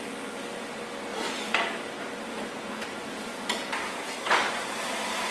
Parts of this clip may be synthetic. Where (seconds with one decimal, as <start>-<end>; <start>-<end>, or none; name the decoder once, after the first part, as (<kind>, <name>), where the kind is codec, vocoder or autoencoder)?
none